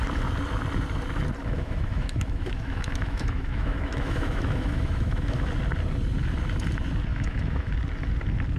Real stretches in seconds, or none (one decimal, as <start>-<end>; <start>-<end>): 0.0-1.4; 5.5-7.1; 7.7-8.6